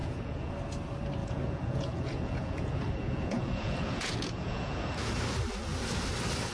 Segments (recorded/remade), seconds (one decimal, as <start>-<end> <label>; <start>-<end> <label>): 0.0-0.5 remade; 0.5-1.2 recorded; 1.2-5.1 remade; 5.1-6.5 recorded